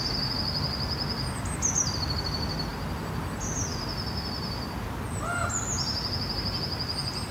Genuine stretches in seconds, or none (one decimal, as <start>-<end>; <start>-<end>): 0.0-7.3